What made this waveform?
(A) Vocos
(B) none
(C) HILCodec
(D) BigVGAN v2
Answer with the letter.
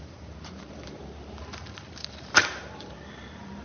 D